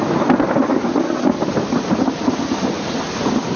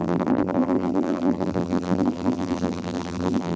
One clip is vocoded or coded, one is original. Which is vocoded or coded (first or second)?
second